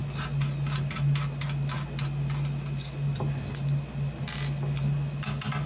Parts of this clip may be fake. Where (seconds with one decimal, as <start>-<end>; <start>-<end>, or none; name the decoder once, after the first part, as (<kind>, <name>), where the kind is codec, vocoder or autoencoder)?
none